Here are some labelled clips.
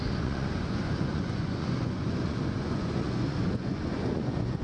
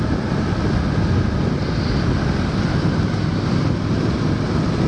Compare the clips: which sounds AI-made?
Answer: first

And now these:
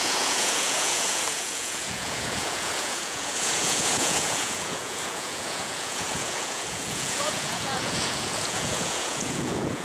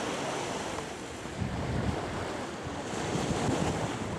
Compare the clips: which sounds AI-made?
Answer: first